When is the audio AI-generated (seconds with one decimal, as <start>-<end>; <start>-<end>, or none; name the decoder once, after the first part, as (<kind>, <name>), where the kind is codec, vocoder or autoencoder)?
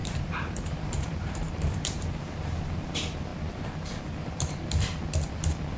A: 0.0-2.2 (vocoder, BigVGAN v2)